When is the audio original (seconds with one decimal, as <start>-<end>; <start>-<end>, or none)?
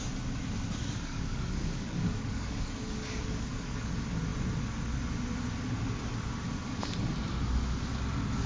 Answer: 0.0-0.8; 3.9-8.5